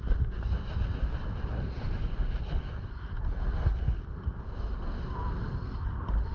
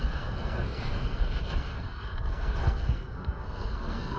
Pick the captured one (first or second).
first